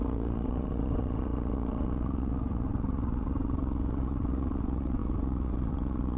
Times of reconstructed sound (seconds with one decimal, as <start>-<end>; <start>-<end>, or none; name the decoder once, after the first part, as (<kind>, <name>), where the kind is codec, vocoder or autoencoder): 0.0-6.2 (vocoder, WaveNeXt)